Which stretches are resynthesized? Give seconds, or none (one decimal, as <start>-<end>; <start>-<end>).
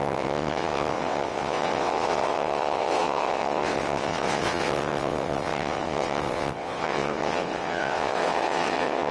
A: 0.0-9.1